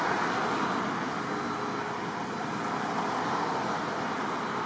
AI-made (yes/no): no